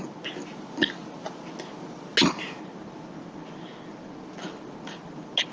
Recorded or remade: recorded